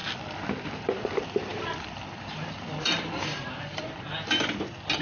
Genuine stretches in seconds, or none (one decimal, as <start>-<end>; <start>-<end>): 0.0-1.5; 4.5-5.0